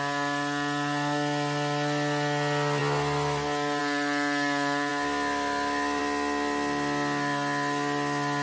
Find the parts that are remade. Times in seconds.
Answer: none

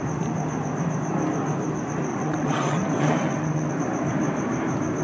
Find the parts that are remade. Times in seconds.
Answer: 2.1-3.7 (vocoder, WaveNeXt)

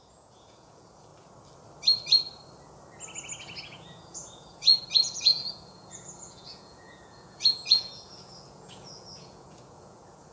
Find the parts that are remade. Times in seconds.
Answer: 0.0-1.1 (vocoder, Vocos); 3.6-10.3

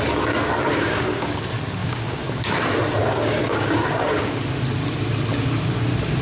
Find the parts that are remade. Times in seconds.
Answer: 0.7-1.4 (codec, DAC); 1.8-2.5; 3.0-4.4